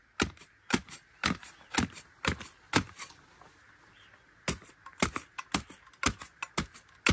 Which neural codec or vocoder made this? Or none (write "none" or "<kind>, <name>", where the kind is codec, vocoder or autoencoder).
none